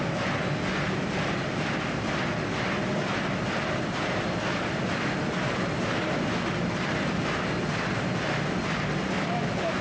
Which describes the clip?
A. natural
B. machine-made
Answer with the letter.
A